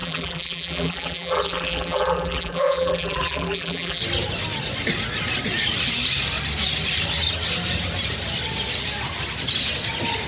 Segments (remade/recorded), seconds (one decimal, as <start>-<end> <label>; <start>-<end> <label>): 0.0-4.0 remade; 4.0-10.3 recorded